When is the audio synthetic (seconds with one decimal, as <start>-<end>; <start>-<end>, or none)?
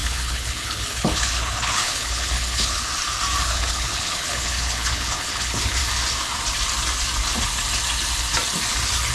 0.0-2.9; 3.4-5.8